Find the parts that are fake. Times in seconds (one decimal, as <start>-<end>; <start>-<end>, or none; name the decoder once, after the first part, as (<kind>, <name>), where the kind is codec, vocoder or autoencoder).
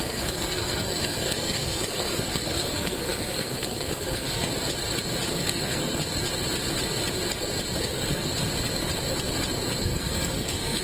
0.0-4.5 (codec, SNAC); 5.4-6.0; 7.8-8.3; 9.8-10.8